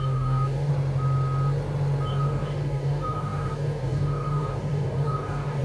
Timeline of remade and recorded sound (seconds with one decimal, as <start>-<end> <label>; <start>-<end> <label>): 0.0-0.7 remade; 0.7-2.1 recorded; 2.1-5.6 remade